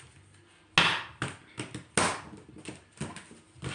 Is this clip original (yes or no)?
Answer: yes